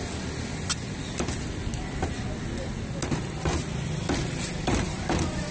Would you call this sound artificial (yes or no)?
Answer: no